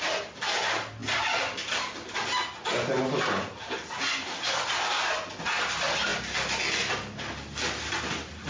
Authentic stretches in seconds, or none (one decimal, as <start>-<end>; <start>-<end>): 0.0-8.5